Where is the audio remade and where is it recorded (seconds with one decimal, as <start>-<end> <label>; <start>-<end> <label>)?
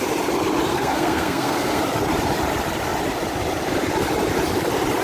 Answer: 0.0-0.7 recorded; 0.7-1.8 remade; 1.8-5.0 recorded